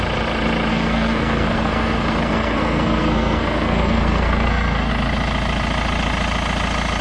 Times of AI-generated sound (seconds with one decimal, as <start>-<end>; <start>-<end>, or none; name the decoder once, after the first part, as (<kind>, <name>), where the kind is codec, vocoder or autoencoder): 0.7-4.9 (codec, SNAC)